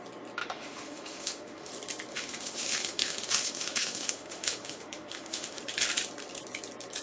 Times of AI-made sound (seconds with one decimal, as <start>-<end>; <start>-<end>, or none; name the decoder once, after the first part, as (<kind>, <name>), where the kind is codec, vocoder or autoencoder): 0.4-1.7 (autoencoder, DAC-VAE); 2.1-5.6